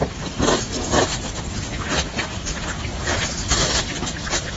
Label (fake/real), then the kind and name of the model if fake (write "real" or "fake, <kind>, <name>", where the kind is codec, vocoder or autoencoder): real